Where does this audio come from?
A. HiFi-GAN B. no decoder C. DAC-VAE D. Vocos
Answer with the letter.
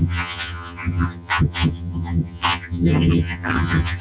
A